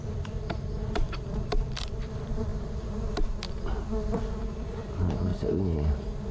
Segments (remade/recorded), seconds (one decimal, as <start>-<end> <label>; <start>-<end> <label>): 0.0-2.5 remade; 2.5-4.2 recorded; 4.2-5.3 remade; 5.3-6.3 recorded